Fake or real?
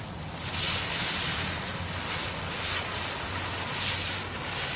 real